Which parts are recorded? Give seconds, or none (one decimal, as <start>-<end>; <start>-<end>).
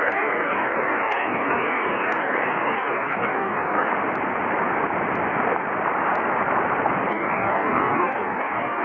3.9-7.1